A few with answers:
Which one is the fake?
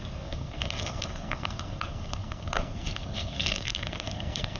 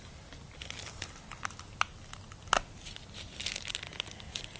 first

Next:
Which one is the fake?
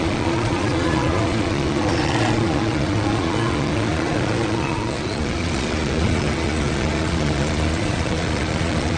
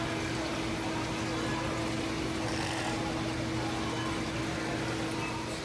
first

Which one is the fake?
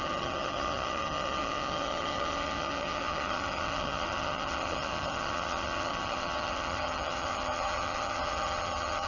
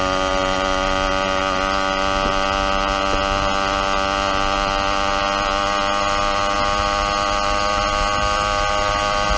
first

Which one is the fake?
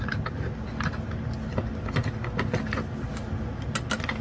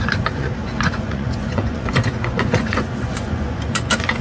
second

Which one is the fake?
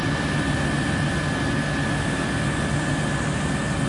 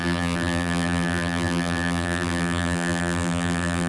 second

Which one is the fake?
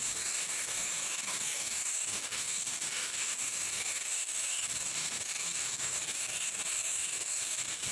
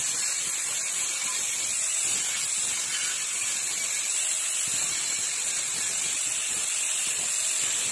first